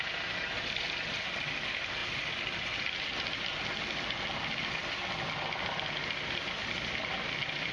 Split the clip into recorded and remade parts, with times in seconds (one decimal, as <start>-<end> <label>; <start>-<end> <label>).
0.0-7.7 recorded